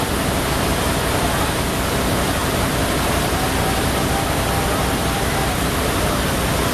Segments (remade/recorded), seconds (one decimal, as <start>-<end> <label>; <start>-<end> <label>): 0.0-6.7 recorded